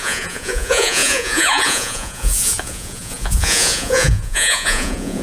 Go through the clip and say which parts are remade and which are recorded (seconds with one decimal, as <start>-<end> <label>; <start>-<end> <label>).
0.0-5.2 remade